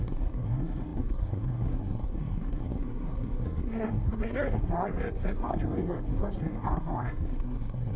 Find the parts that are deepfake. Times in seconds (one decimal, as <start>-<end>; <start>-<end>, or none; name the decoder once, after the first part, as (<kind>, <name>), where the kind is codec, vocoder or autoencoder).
0.0-8.0 (codec, SNAC)